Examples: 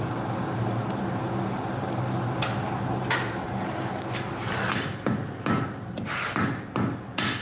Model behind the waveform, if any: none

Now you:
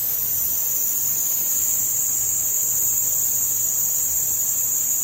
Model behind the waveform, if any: none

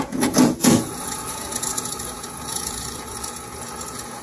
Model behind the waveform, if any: vocoder, Vocos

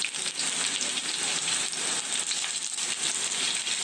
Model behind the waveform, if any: none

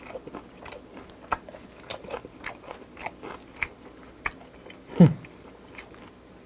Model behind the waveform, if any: none